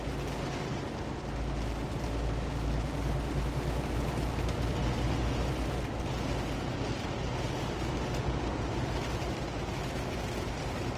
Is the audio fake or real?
real